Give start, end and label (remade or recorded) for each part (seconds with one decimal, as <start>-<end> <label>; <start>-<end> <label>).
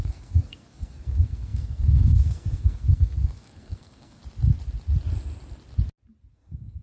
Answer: 0.0-4.2 remade; 4.2-6.3 recorded; 6.3-6.8 remade